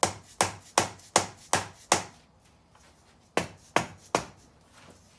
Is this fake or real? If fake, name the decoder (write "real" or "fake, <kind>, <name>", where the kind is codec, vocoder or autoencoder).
real